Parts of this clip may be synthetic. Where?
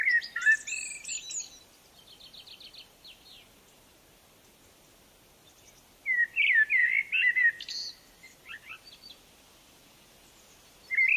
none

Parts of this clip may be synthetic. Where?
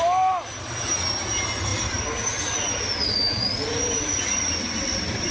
none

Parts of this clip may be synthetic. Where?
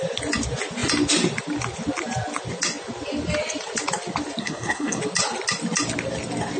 4.4-5.0 (codec, SNAC)